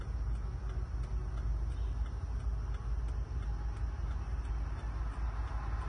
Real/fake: real